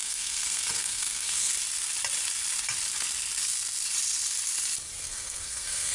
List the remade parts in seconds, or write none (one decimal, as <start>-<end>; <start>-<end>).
0.0-1.5; 5.0-5.9